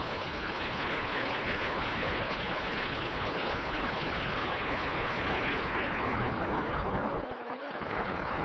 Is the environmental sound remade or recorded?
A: remade